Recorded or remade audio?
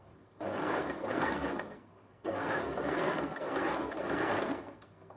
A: remade